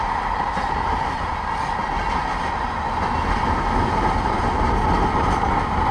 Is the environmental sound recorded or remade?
recorded